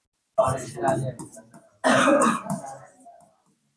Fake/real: real